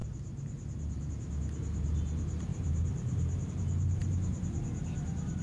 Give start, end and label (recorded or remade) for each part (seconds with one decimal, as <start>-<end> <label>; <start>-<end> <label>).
0.0-1.1 remade; 1.1-2.5 recorded; 2.5-3.5 remade; 3.5-5.4 recorded